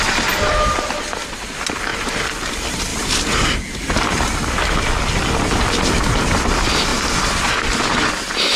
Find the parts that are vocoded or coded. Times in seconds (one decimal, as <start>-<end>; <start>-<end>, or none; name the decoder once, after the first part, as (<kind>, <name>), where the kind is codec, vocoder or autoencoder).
none